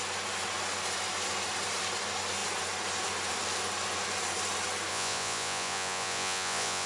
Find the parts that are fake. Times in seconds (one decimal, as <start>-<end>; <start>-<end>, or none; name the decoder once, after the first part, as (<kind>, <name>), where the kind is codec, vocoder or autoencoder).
4.9-6.9 (vocoder, Vocos)